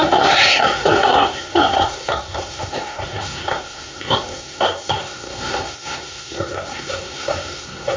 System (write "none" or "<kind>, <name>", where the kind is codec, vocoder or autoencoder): codec, SNAC